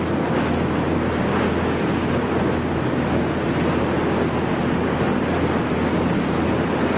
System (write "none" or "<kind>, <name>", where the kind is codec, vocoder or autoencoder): none